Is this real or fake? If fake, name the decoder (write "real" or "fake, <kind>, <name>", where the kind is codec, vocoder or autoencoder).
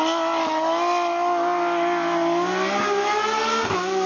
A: real